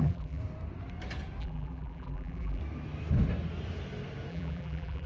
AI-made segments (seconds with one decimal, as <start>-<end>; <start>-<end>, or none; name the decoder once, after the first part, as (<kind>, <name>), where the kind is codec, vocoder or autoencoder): 0.0-0.4 (vocoder, BigVGAN v2); 1.4-2.6; 4.3-5.1